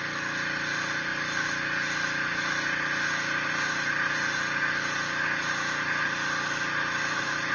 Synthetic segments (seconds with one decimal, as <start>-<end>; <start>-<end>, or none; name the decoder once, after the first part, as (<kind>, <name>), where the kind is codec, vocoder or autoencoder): none